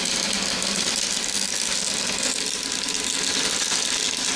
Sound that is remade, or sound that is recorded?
recorded